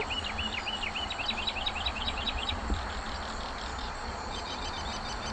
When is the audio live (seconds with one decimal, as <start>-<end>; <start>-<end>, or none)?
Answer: 0.0-2.0; 2.6-3.7; 4.7-5.3